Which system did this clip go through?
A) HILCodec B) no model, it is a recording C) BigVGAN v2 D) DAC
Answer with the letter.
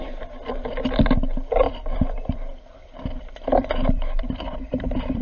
C